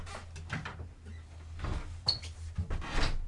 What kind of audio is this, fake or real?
real